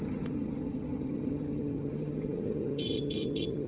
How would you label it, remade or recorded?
remade